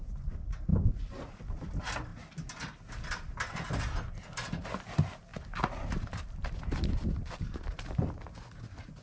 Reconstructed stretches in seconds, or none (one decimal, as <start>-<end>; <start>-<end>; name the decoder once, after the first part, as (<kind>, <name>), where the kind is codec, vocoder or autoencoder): none